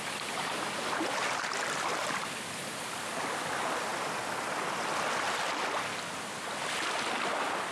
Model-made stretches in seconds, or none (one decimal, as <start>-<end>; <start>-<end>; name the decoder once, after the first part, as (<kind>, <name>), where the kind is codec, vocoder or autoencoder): none

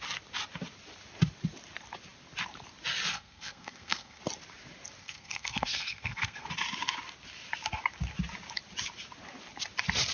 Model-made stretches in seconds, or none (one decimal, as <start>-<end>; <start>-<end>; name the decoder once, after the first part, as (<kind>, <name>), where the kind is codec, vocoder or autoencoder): 3.1-4.2 (codec, SNAC); 5.0-6.5

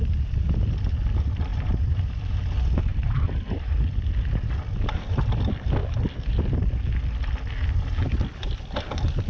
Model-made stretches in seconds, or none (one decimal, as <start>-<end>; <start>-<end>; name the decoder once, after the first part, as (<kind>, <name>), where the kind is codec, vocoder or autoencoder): 1.5-2.4 (vocoder, BigVGAN v2); 2.9-4.0

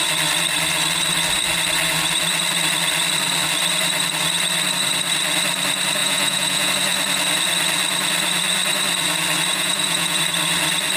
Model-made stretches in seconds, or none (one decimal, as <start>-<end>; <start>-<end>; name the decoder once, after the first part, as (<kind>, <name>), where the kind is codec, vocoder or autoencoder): 6.0-6.7 (vocoder, Vocos); 9.5-10.2

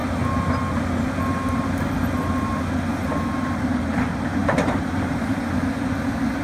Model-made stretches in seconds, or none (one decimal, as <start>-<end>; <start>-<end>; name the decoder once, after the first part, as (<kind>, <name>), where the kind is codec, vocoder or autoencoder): 4.4-5.4 (vocoder, BigVGAN v2)

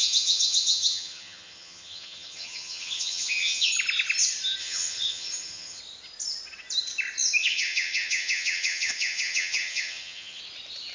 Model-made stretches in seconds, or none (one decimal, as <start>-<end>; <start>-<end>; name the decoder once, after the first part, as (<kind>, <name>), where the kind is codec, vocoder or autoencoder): 0.0-3.7 (vocoder, HiFi-GAN); 4.6-5.8; 7.4-10.4

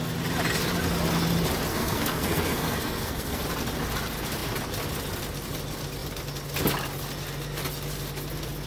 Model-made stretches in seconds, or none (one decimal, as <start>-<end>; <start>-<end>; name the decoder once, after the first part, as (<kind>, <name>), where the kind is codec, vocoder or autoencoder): 1.7-3.4 (codec, SNAC)

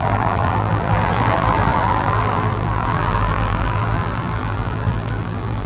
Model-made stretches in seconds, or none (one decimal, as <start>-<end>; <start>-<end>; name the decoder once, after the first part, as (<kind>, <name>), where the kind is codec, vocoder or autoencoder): 0.0-5.7 (vocoder, BigVGAN v2)